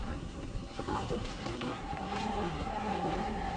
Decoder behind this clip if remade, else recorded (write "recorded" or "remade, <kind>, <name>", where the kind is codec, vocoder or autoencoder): remade, codec, SNAC